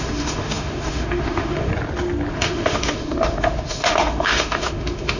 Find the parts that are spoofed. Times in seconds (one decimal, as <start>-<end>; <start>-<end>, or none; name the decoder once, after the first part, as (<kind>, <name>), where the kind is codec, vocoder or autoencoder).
0.0-1.7 (autoencoder, DAC-VAE); 2.3-5.2